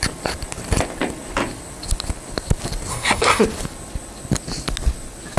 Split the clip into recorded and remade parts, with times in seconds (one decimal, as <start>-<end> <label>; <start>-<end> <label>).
0.0-2.9 recorded; 2.9-3.4 remade; 3.4-5.4 recorded